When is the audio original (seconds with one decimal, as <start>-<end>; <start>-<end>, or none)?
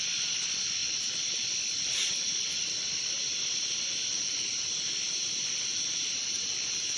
0.0-0.8; 5.0-5.7